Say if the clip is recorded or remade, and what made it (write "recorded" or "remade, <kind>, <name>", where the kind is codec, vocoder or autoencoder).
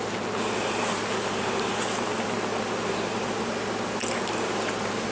recorded